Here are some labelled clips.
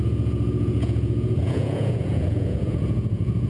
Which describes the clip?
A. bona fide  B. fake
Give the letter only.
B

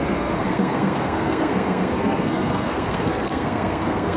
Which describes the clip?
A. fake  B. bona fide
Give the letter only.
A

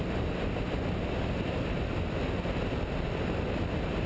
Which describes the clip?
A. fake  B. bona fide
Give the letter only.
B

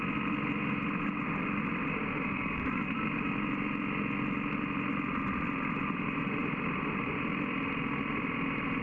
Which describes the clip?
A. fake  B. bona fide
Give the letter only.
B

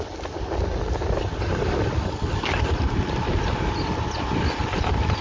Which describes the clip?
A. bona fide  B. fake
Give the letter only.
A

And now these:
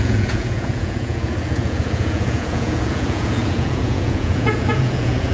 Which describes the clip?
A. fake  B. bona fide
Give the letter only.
A